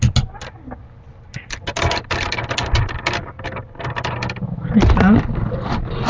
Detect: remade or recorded recorded